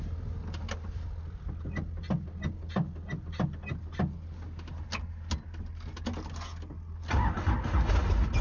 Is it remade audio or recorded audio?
recorded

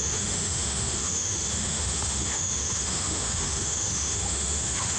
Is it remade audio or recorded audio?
remade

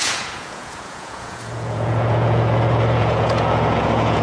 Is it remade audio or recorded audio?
remade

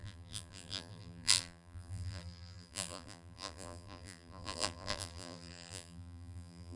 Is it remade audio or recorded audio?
remade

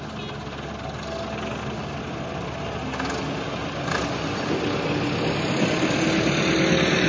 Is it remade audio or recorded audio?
recorded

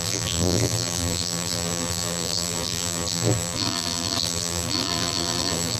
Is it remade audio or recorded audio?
remade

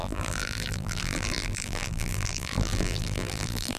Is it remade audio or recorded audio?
remade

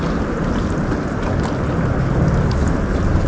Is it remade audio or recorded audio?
recorded